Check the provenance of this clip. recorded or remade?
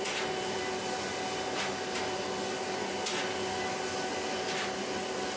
recorded